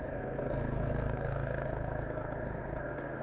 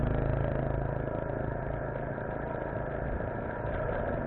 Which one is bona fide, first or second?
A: second